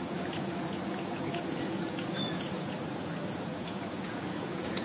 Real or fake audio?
fake